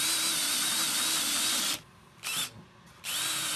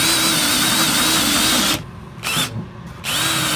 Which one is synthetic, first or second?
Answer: first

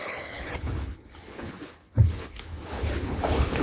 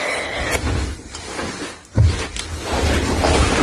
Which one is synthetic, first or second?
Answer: first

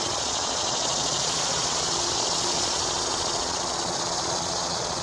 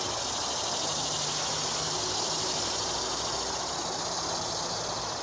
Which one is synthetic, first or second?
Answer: first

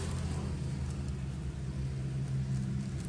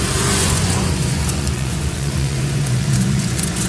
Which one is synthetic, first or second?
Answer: second